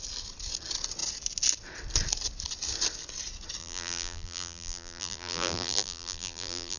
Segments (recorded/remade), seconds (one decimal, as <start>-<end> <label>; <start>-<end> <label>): 0.0-3.6 recorded; 3.6-6.8 remade